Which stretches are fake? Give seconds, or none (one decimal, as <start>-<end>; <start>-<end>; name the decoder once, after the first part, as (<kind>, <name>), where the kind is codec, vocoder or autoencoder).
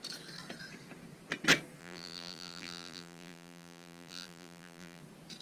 1.8-5.0 (vocoder, BigVGAN v2)